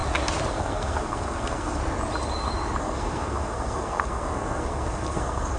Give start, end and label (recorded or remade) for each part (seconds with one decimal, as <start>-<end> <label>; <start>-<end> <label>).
0.0-0.5 recorded; 0.5-1.8 remade; 1.8-2.8 recorded; 2.8-5.6 remade